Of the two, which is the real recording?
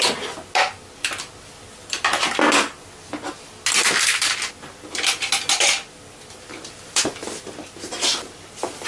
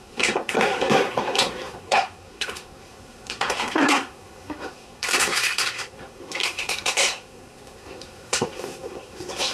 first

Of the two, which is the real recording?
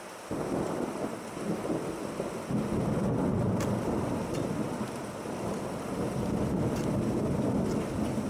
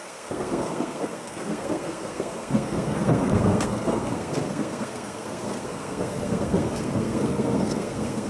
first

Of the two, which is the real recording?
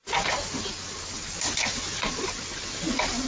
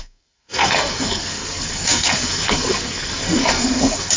first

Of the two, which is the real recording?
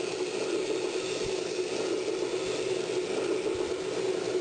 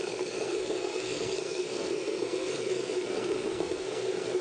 first